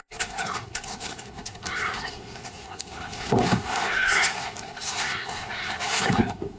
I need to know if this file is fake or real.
fake